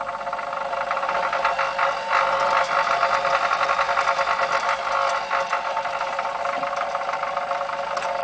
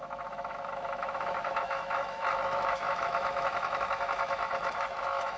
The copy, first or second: second